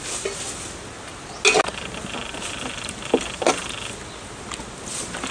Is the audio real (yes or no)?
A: yes